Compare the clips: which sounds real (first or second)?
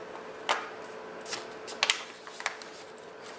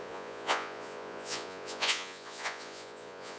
first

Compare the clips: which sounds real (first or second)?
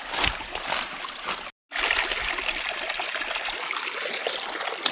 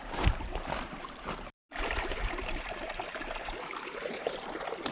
first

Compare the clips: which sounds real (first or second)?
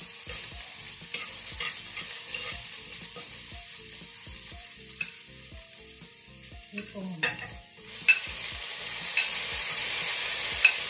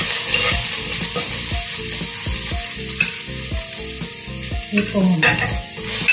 second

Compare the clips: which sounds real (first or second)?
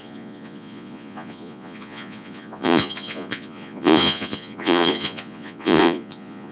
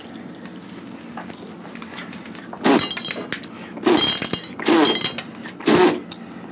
second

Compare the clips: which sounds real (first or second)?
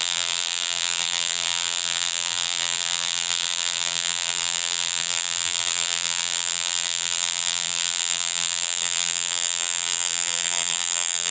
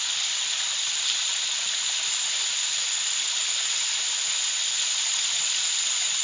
second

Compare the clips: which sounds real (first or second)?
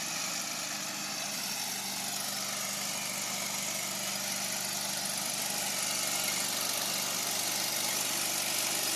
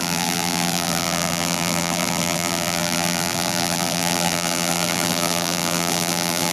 first